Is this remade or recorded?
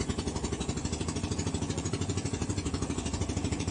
remade